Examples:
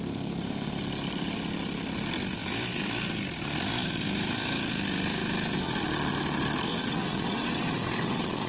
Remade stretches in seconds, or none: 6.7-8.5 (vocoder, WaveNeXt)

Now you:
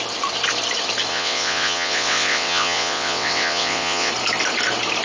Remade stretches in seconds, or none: 1.1-4.1 (vocoder, WaveNeXt)

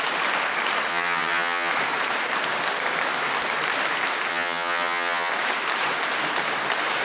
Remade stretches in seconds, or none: 0.9-1.7 (vocoder, HiFi-GAN); 4.3-5.3

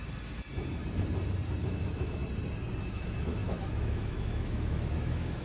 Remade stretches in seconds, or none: 1.6-2.2 (autoencoder, DAC-VAE); 2.9-5.4

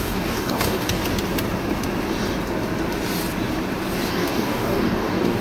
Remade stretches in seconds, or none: 0.0-1.0 (codec, DAC); 4.1-5.4